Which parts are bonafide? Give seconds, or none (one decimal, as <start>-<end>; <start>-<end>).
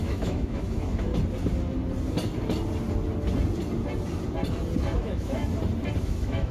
1.1-5.0; 5.4-6.0